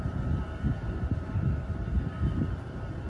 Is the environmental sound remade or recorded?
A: remade